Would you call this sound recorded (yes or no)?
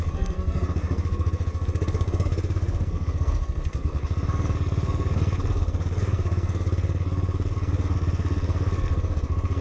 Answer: no